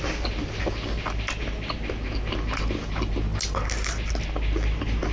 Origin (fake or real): real